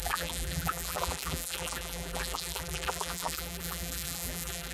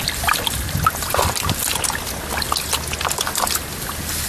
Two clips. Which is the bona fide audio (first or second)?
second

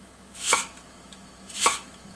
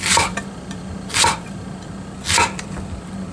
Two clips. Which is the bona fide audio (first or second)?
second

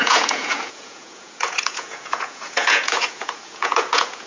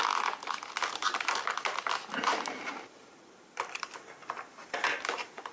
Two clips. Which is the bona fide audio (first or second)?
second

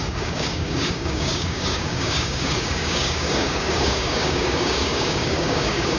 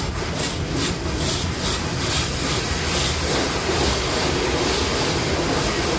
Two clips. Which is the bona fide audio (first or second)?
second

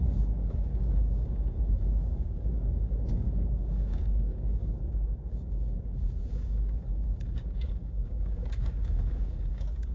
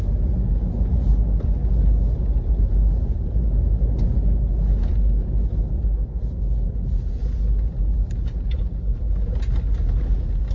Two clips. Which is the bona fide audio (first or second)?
second